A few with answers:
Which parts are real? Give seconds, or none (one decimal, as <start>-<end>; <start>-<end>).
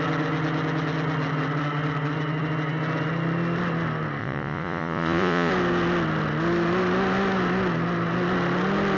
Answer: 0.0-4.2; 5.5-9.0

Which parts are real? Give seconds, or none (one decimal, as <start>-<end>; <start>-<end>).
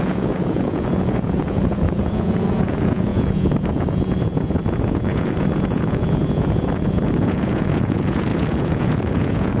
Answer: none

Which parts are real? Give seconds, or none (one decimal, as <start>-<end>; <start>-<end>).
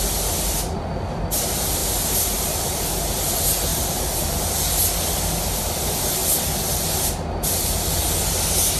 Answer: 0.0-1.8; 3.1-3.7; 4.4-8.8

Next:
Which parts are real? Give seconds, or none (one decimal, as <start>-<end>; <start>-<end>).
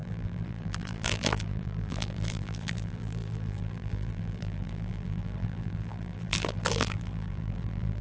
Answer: none